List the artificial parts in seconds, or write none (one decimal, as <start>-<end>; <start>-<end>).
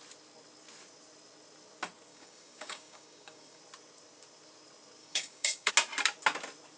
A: 2.1-3.6; 5.0-5.7